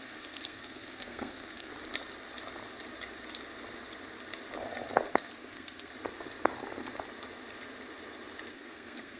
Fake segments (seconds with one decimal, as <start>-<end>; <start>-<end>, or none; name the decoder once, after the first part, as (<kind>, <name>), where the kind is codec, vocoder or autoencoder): 0.0-1.7 (codec, SNAC); 5.1-5.9; 8.5-9.2